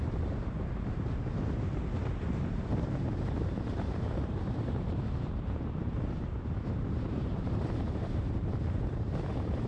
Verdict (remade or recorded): remade